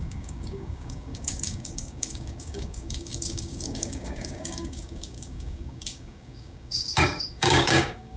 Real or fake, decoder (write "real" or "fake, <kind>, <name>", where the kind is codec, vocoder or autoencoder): fake, codec, DAC